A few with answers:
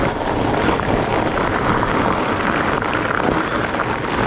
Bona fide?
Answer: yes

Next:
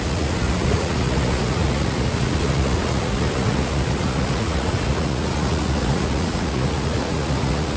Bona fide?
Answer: no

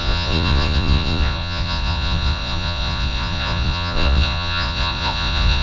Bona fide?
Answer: no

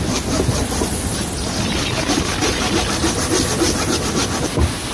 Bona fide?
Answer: yes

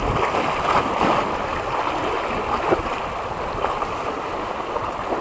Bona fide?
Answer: yes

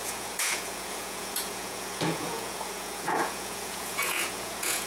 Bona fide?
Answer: no